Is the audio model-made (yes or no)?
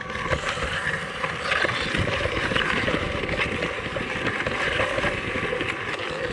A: no